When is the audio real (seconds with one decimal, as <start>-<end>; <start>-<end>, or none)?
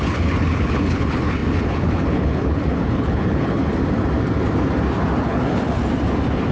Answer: 3.6-5.2; 5.8-6.5